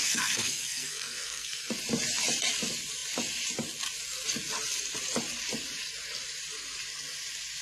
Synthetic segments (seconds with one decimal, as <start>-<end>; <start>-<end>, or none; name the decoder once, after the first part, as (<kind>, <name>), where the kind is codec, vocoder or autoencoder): 0.0-1.7 (codec, SNAC)